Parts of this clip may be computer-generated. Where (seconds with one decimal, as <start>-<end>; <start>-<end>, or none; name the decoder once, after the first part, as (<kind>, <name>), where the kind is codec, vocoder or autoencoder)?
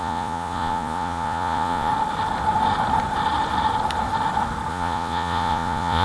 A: 0.0-1.9 (vocoder, Vocos); 4.7-6.0